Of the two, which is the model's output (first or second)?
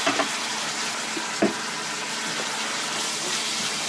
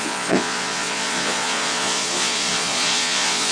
second